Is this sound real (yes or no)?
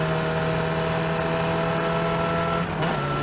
yes